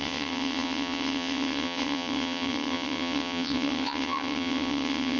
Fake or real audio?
fake